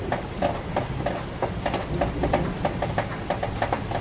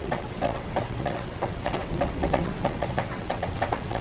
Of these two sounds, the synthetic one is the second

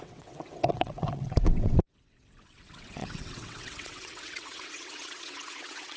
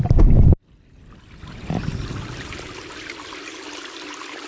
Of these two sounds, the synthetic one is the first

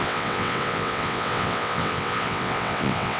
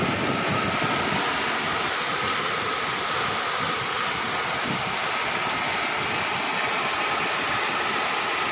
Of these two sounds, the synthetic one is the first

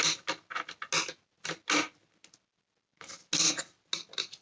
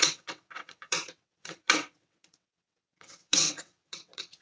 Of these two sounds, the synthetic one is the second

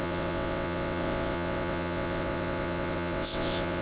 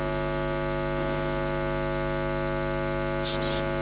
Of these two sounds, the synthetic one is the first